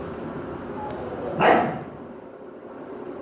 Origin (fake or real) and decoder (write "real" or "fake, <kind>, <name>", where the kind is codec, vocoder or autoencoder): real